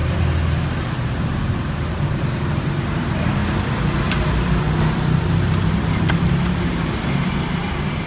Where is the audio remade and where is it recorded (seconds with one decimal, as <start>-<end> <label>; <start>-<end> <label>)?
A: 0.0-0.8 recorded; 0.8-3.4 remade; 3.4-5.2 recorded; 5.2-8.1 remade